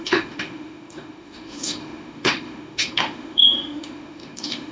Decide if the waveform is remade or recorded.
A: remade